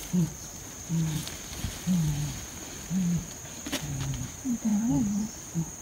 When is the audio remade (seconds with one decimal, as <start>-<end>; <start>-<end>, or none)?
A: 0.0-1.2; 3.2-5.8